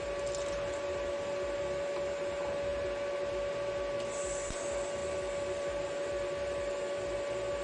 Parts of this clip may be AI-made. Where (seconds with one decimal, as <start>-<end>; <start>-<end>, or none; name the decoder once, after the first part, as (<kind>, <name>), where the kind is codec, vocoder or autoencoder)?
none